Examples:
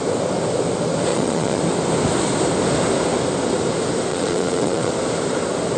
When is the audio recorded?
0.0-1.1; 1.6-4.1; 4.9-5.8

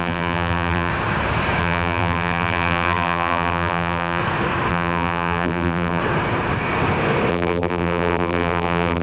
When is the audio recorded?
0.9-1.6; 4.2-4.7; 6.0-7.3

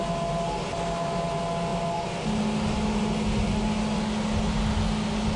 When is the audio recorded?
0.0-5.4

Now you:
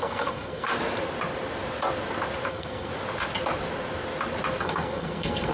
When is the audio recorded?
0.7-2.5; 2.9-4.6

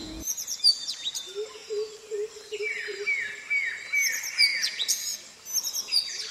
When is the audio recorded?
0.6-4.5; 5.2-6.3

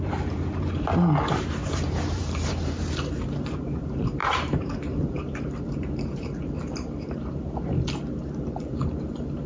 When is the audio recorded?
none

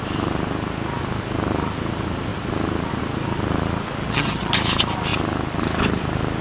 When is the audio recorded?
0.0-4.0; 4.5-6.4